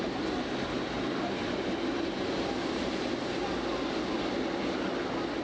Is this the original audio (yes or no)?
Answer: yes